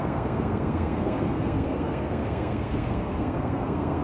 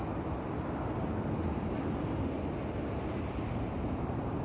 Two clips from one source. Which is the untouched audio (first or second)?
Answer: second